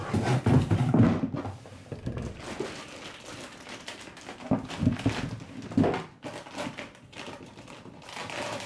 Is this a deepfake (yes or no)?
no